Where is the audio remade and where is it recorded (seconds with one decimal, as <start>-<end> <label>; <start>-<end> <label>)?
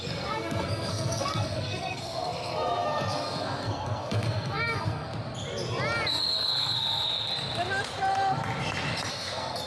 0.0-5.1 remade; 5.1-6.1 recorded; 6.1-7.3 remade; 7.3-9.1 recorded; 9.1-9.7 remade